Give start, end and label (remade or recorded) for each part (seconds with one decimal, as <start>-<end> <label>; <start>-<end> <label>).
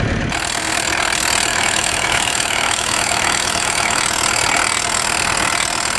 0.0-1.5 recorded; 1.5-4.0 remade; 4.0-6.0 recorded